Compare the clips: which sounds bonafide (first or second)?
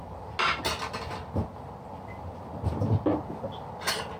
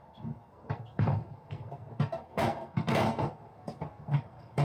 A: first